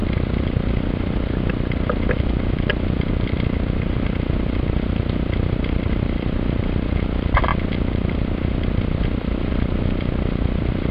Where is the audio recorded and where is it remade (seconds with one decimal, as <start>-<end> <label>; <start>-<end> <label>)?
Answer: 0.0-0.6 recorded; 0.6-10.9 remade